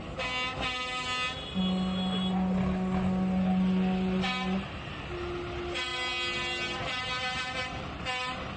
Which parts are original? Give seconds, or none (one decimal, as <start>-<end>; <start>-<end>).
0.0-8.6